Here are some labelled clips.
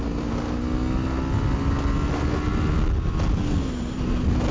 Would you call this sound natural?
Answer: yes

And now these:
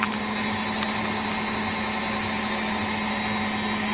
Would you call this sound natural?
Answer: yes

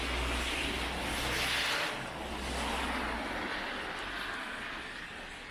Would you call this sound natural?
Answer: yes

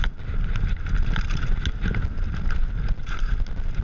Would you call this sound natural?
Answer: yes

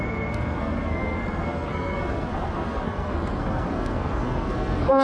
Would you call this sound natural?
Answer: no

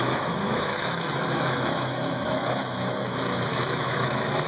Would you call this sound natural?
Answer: no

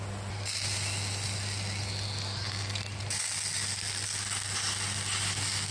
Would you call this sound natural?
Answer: yes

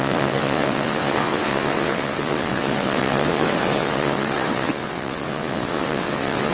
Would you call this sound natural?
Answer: no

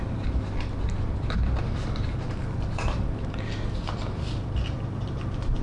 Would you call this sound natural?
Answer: no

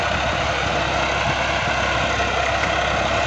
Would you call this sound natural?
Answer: yes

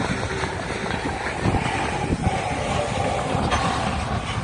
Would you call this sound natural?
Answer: yes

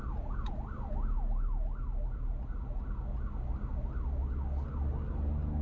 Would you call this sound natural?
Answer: yes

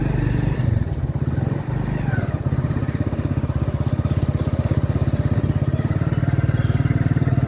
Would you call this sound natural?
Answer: yes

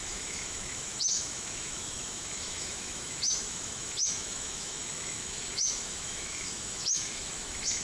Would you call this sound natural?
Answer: no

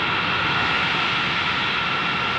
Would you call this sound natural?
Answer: yes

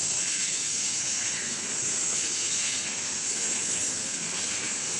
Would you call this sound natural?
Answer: no